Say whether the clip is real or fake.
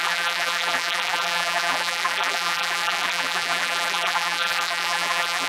fake